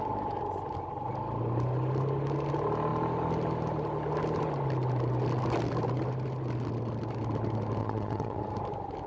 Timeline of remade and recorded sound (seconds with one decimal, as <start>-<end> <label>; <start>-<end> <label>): 0.0-7.8 recorded; 7.8-8.4 remade; 8.4-9.1 recorded